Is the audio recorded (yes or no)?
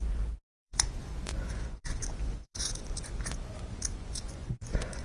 no